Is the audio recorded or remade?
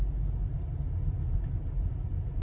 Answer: recorded